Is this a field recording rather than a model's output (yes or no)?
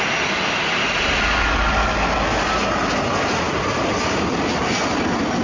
yes